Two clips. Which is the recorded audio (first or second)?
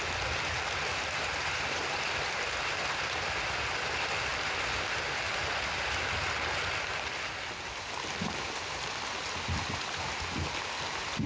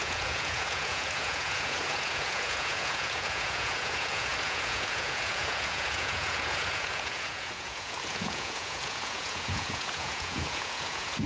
first